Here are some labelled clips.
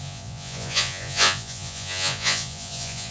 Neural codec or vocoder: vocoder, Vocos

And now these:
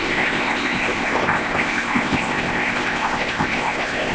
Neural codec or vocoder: codec, ZipCodec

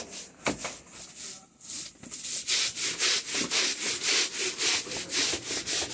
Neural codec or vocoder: none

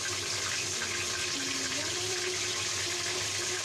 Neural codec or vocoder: none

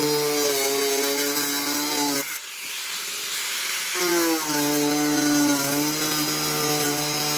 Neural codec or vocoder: none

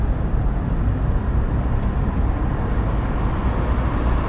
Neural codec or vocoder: none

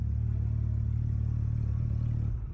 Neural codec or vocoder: none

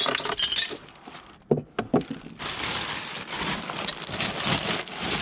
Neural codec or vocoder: none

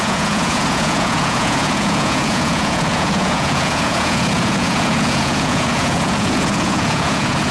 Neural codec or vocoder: vocoder, Vocos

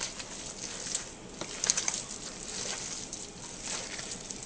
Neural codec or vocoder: none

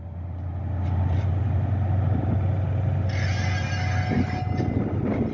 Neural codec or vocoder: none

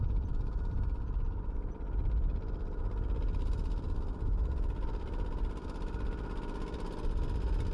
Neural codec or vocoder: none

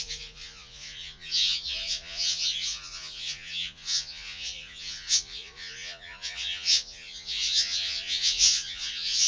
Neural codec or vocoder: vocoder, Vocos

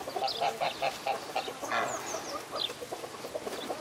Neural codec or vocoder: none